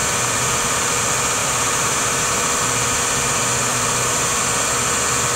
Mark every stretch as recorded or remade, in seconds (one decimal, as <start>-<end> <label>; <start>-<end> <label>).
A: 0.0-0.9 remade; 0.9-1.4 recorded; 1.4-2.6 remade; 2.6-3.7 recorded; 3.7-4.4 remade; 4.4-5.4 recorded